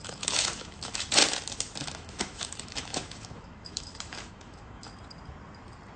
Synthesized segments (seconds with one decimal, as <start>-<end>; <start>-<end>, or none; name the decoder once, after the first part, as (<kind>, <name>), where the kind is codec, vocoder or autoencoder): 0.0-1.2 (autoencoder, DAC-VAE); 1.8-4.9